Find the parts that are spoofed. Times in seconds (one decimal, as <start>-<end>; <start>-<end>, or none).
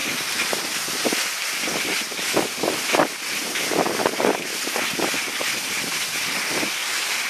0.0-0.5; 6.8-7.3